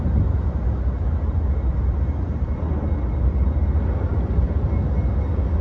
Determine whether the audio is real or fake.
real